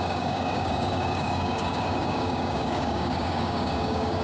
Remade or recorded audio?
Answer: remade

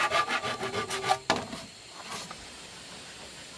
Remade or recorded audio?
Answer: recorded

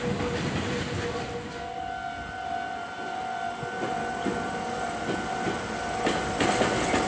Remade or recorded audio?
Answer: recorded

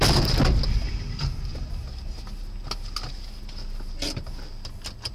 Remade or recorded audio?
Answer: recorded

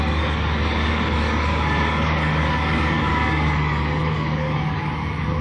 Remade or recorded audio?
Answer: remade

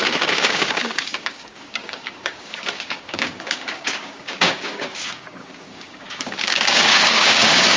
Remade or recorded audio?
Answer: remade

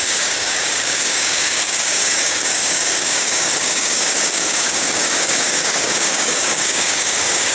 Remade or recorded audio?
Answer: remade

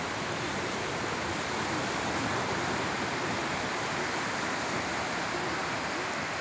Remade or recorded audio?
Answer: recorded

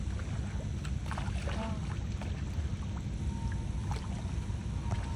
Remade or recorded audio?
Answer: recorded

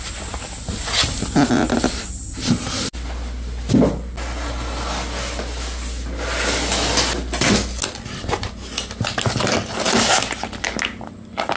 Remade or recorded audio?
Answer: recorded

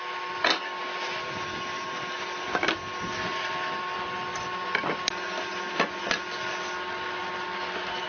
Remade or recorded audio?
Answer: recorded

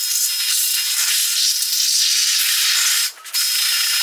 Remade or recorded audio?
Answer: recorded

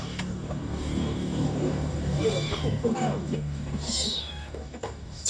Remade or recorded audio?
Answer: remade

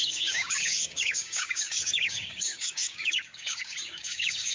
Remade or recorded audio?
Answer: remade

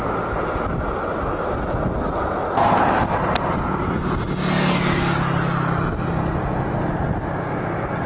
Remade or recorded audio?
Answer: recorded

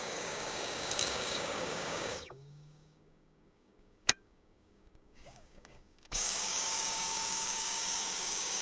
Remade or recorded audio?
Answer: remade